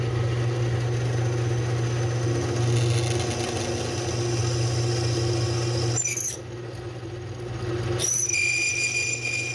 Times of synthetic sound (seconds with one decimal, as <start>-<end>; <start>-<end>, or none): none